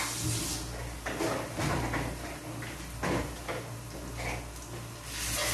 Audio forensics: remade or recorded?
recorded